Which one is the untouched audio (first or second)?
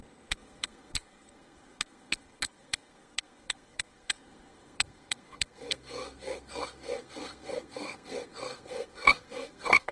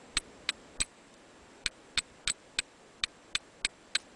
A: second